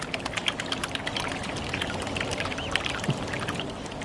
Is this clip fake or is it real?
real